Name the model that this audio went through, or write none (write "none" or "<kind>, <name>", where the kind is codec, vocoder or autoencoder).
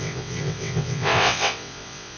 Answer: vocoder, WaveNeXt